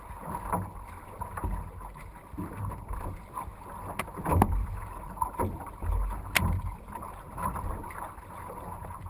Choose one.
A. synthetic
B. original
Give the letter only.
B